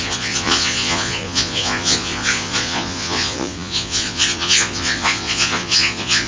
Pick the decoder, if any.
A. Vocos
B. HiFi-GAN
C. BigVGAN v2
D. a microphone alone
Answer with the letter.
A